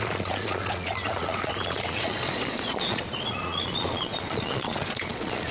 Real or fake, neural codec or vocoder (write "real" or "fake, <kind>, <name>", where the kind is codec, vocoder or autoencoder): fake, vocoder, Vocos